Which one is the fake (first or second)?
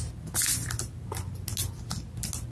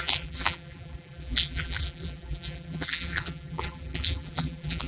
second